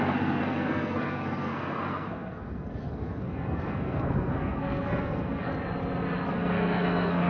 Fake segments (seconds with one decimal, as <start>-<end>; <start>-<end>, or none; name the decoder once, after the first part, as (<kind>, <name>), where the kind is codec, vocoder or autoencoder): 0.0-5.5 (codec, SNAC); 6.3-7.3